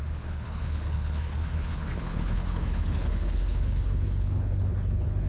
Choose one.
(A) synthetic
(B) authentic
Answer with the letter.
A